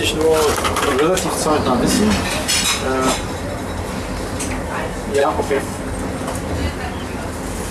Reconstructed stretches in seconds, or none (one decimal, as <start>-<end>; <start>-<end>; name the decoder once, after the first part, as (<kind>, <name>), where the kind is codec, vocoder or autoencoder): 5.2-5.8 (codec, SNAC)